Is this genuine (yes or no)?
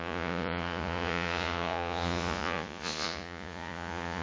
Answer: no